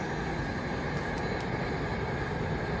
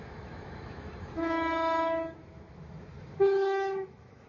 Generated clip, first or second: second